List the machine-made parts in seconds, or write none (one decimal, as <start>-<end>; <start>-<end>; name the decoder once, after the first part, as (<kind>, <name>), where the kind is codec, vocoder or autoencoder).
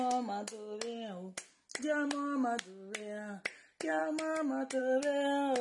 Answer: none